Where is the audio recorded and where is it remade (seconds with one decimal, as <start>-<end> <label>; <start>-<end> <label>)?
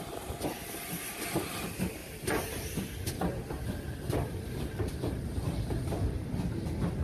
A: 0.0-2.0 recorded; 2.0-5.3 remade; 5.3-7.0 recorded